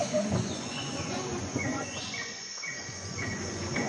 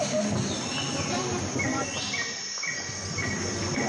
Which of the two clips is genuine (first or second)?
second